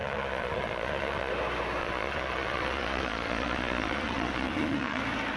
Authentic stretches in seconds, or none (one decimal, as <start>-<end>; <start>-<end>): 1.3-1.8; 5.0-5.4